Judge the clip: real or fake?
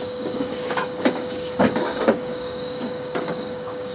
fake